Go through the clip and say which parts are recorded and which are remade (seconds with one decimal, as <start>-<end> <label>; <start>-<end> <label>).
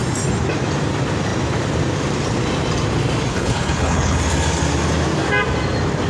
0.0-3.3 recorded; 3.3-4.2 remade; 4.2-6.1 recorded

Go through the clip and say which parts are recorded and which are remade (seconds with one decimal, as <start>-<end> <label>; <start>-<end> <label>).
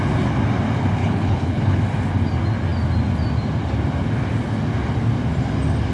0.0-1.0 recorded; 1.0-1.8 remade; 1.8-5.9 recorded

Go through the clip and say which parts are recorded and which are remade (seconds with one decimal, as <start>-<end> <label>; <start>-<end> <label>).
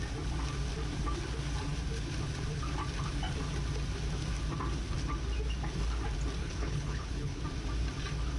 0.0-6.4 recorded; 6.4-7.4 remade; 7.4-8.4 recorded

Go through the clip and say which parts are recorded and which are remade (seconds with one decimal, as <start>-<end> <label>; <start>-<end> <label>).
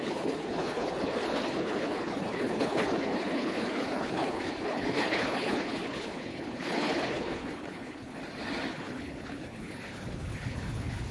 0.0-8.2 remade; 8.2-8.7 recorded; 8.7-11.1 remade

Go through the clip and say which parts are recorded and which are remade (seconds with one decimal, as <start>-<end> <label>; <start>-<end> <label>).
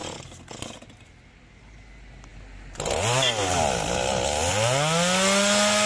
0.0-5.9 recorded